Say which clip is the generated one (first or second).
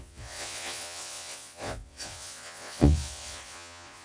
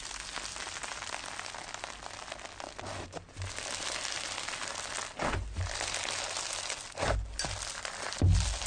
first